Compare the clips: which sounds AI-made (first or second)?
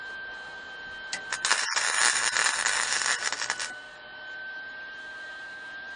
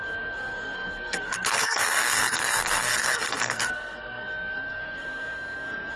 second